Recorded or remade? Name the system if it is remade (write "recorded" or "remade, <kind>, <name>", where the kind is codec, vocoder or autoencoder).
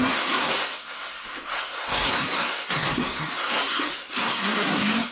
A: remade, codec, SNAC